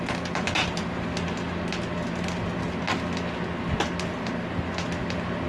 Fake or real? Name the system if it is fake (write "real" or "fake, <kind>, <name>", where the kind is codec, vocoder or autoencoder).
real